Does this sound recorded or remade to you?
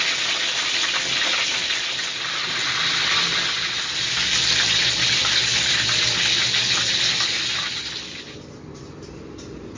recorded